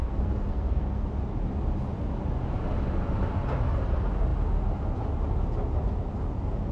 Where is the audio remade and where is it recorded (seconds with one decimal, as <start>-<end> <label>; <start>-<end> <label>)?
0.0-1.0 remade; 1.0-6.7 recorded